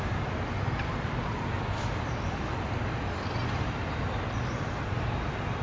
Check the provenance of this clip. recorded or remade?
recorded